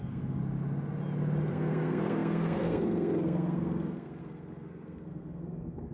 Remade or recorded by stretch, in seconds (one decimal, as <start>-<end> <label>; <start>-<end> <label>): 0.0-0.4 remade; 0.4-1.5 recorded; 1.5-5.9 remade